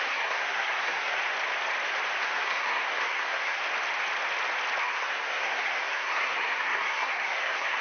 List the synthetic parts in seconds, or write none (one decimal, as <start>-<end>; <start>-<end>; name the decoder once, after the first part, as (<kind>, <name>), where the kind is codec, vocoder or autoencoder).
0.0-1.2 (codec, SNAC); 2.2-3.6; 4.8-7.8